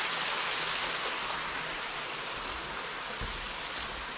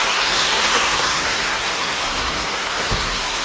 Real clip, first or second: first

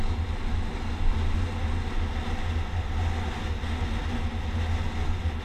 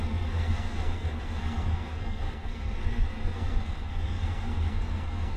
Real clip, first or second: first